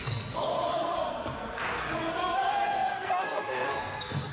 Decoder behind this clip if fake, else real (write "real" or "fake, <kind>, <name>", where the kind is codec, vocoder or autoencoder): fake, codec, SNAC